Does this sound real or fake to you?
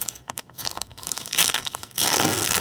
fake